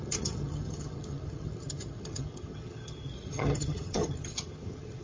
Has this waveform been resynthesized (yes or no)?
yes